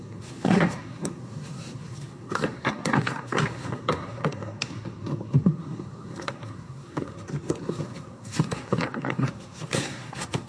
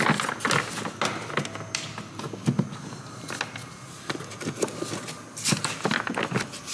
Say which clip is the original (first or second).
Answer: second